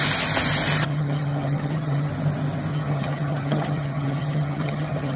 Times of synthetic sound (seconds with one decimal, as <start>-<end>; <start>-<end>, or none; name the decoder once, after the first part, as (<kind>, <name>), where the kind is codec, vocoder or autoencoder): 0.8-2.1 (vocoder, HiFi-GAN); 2.7-5.2